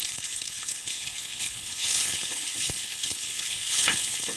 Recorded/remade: remade